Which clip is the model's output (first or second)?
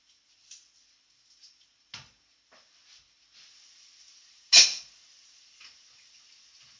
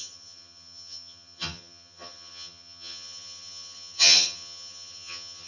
second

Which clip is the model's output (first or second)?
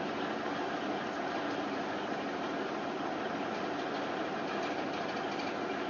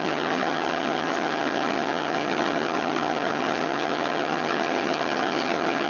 second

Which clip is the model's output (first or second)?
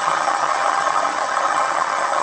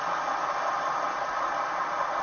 first